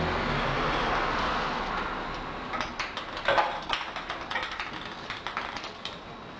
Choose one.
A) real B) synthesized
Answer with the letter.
A